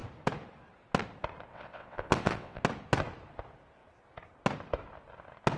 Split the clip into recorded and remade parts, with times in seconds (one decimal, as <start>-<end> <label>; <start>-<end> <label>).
0.0-1.5 recorded; 1.5-2.6 remade; 2.6-5.6 recorded